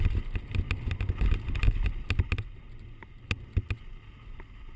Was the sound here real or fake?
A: real